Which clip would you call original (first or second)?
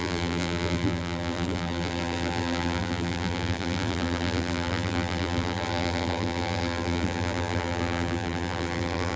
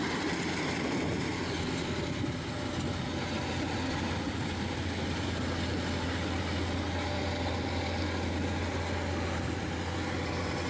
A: second